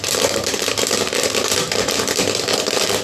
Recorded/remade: recorded